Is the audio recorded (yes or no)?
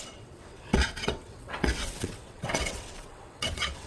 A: no